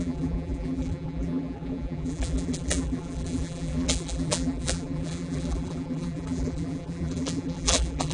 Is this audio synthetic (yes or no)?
yes